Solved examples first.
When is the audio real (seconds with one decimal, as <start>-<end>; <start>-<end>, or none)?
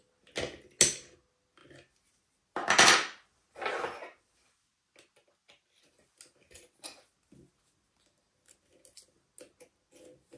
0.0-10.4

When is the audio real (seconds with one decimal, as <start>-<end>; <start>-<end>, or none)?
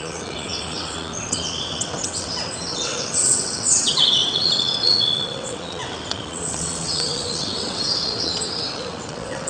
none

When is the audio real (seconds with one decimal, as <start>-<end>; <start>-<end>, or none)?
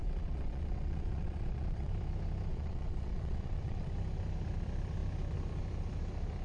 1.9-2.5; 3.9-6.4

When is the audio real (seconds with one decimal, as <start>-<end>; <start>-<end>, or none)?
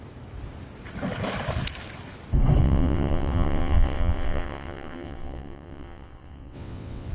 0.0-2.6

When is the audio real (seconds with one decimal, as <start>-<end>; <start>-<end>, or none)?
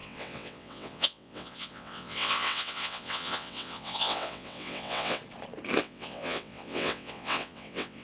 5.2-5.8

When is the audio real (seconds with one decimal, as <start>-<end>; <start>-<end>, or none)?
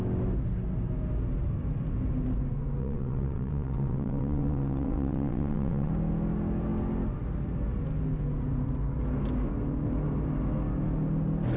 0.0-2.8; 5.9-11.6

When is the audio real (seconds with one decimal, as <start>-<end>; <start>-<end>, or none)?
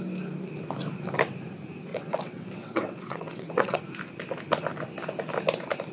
0.0-1.9; 3.8-5.9